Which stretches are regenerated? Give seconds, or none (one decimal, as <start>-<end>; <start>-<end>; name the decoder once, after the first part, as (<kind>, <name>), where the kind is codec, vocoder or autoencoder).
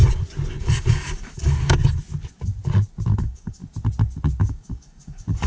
0.6-1.8 (codec, DAC); 3.2-3.6; 4.4-5.5